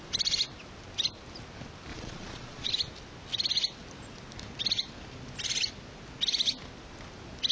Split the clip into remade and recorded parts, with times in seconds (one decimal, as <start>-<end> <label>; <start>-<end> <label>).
0.0-1.9 recorded; 1.9-2.7 remade; 2.7-7.5 recorded